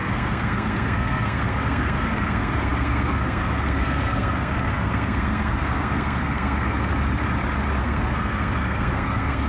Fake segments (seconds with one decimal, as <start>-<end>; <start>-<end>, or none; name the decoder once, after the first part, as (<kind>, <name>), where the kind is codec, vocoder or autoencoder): 0.0-6.9 (codec, SNAC); 7.8-9.5